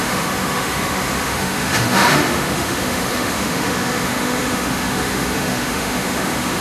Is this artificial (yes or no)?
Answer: yes